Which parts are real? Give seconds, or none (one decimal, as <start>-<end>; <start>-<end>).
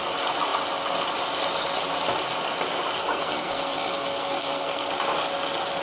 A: 0.0-3.0; 4.9-5.8